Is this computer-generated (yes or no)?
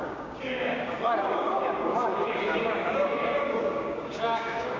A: yes